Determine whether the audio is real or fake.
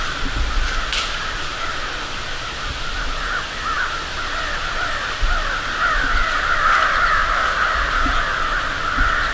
real